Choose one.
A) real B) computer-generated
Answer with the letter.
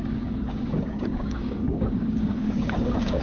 B